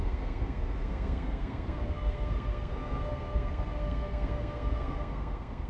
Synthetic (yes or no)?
yes